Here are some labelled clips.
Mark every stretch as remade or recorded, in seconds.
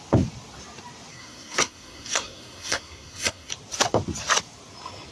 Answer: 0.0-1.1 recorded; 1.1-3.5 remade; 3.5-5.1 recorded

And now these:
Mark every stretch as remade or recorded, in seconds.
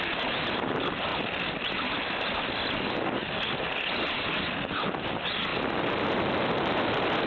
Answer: 0.0-7.3 recorded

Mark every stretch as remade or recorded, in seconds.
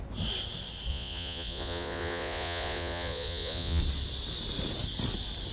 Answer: 0.0-0.9 recorded; 0.9-3.8 remade; 3.8-5.5 recorded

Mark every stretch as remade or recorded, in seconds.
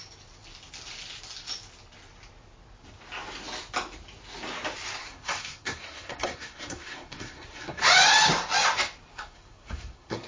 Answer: 0.0-5.0 recorded; 5.0-7.8 remade; 7.8-9.1 recorded; 9.1-10.3 remade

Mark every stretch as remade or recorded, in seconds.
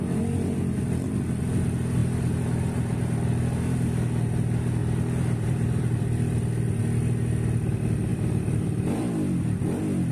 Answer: 0.0-2.0 recorded; 2.0-3.0 remade; 3.0-4.8 recorded; 4.8-6.8 remade; 6.8-8.1 recorded; 8.1-9.1 remade; 9.1-10.1 recorded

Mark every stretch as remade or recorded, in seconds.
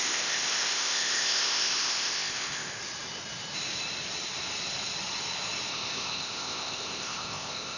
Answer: 0.0-2.8 remade; 2.8-5.7 recorded; 5.7-7.8 remade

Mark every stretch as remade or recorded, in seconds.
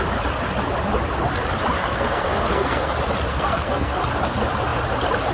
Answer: 0.0-1.8 recorded; 1.8-2.9 remade; 2.9-3.3 recorded; 3.3-4.0 remade; 4.0-5.3 recorded